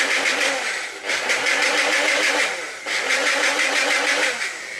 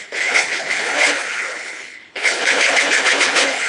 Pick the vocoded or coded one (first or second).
second